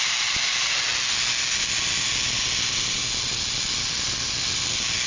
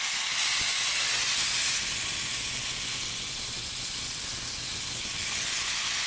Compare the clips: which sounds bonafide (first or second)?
first